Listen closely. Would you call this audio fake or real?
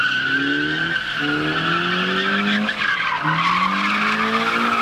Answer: real